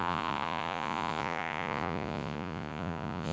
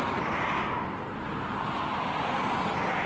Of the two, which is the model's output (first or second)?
first